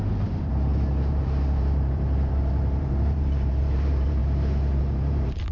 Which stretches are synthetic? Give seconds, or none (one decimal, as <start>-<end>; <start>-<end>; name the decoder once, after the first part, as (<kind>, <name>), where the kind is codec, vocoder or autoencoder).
0.0-4.2 (vocoder, BigVGAN v2); 4.8-5.5